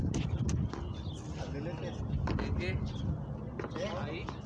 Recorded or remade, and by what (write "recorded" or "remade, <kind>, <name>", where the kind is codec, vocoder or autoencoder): recorded